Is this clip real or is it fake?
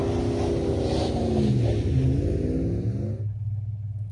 real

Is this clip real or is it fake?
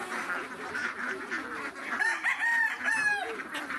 real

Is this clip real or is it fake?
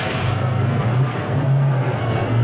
fake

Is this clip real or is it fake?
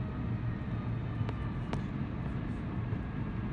real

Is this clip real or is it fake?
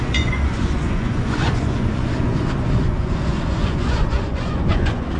fake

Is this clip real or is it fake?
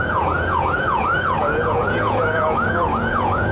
fake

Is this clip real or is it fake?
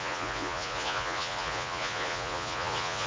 fake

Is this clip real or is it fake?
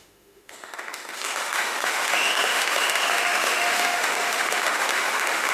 fake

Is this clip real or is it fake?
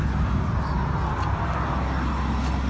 real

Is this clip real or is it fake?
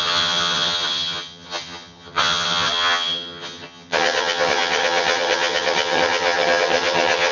fake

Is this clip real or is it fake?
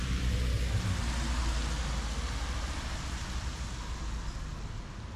real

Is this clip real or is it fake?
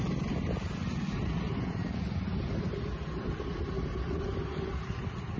real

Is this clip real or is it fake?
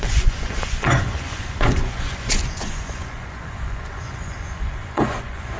fake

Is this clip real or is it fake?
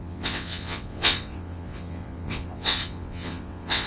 fake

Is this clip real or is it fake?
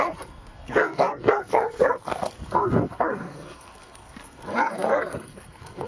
fake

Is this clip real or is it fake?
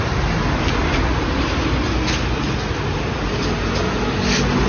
real